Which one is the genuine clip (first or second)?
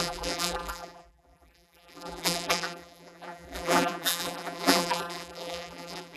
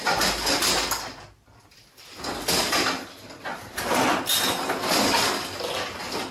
second